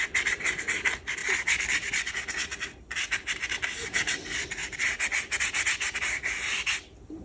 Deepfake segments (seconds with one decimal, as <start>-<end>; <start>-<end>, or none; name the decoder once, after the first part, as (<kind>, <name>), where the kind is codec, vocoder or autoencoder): none